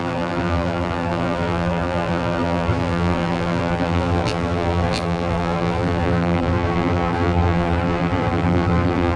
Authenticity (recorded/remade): remade